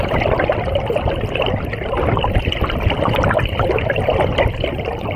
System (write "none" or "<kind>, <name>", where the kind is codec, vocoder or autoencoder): none